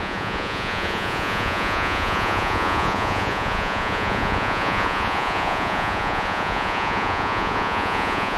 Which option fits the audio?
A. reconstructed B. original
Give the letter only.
A